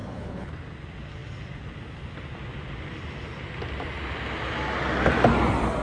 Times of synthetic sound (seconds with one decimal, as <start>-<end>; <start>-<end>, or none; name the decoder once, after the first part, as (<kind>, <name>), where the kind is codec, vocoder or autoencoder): 0.0-0.5 (codec, HILCodec)